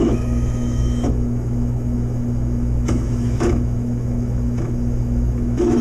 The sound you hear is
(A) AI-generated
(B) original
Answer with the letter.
A